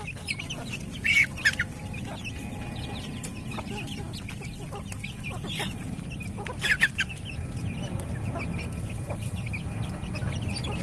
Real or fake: real